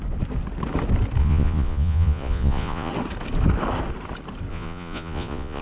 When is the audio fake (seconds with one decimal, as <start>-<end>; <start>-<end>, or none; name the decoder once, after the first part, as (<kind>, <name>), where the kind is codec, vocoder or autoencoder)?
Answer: 1.2-2.9 (vocoder, Vocos); 4.5-5.6